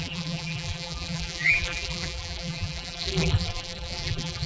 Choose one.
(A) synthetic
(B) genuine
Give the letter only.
A